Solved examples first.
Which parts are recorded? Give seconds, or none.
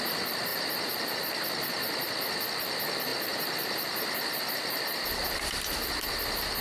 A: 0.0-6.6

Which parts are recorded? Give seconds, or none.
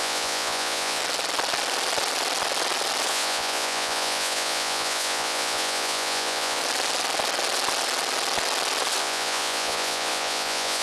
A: 1.0-3.1; 6.6-9.0